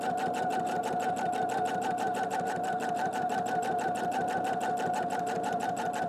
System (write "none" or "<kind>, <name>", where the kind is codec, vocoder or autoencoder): vocoder, BigVGAN v2